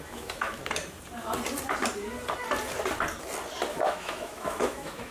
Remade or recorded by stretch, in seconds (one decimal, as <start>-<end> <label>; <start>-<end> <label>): 0.0-0.6 remade; 0.6-3.7 recorded; 3.7-5.1 remade